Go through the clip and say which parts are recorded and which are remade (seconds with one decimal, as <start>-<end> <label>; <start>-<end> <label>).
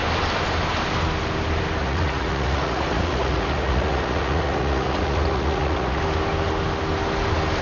0.0-1.8 recorded; 1.8-6.0 remade; 6.0-7.6 recorded